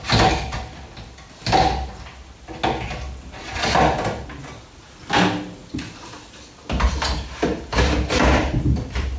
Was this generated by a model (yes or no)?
no